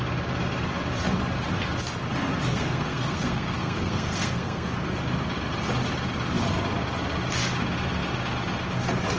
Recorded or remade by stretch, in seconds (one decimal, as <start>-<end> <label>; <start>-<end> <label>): 0.0-2.5 recorded; 2.5-4.7 remade; 4.7-9.2 recorded

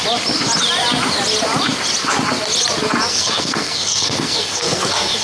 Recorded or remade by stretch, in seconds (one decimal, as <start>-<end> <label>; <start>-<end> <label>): 0.0-3.1 recorded; 3.1-5.2 remade

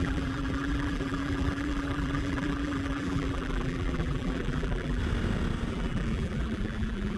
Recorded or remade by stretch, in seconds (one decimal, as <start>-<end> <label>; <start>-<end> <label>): 0.0-5.0 remade; 5.0-5.7 recorded; 5.7-7.2 remade

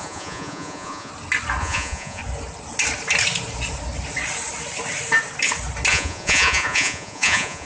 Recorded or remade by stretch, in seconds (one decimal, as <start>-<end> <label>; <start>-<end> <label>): 0.0-1.1 remade; 1.1-1.6 recorded; 1.6-2.2 remade; 2.2-5.9 recorded; 5.9-7.7 remade